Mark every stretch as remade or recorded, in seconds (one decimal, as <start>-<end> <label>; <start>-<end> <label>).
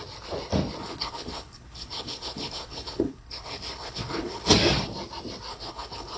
0.0-0.8 recorded; 0.8-4.5 remade; 4.5-5.5 recorded; 5.5-6.2 remade